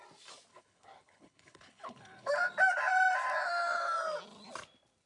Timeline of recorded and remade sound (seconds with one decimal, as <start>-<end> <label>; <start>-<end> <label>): 0.0-0.5 recorded; 0.5-2.3 remade; 2.3-5.1 recorded